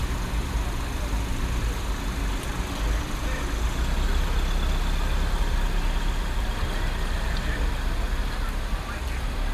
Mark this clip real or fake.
real